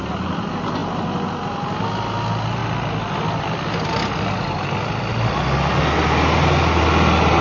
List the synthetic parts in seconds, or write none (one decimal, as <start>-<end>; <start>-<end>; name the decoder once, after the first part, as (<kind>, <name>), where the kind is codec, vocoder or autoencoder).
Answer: 2.6-5.0 (vocoder, BigVGAN v2)